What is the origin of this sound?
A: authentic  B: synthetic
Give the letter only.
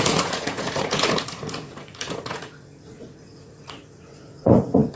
B